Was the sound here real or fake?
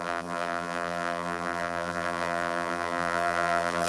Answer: fake